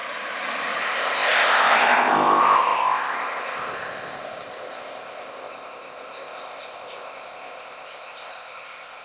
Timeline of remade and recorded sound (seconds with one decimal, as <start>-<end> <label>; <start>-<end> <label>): 0.0-0.8 recorded; 0.8-9.0 remade

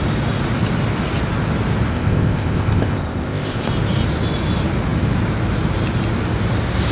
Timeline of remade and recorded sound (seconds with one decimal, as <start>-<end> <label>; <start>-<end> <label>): 0.0-1.9 recorded; 1.9-3.7 remade; 3.7-6.9 recorded